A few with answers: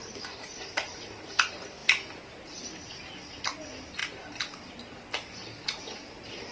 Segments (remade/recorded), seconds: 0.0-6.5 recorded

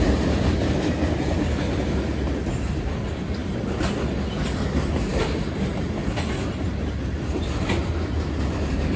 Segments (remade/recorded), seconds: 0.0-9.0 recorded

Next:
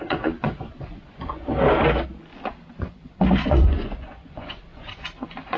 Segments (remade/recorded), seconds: 0.0-1.5 remade; 1.5-2.8 recorded; 2.8-5.6 remade